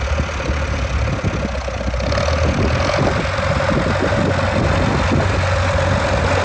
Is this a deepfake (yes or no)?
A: no